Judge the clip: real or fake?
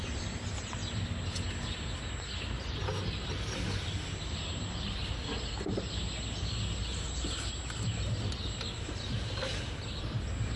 real